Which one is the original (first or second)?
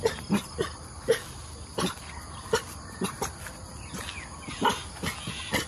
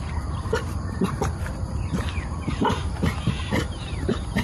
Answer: first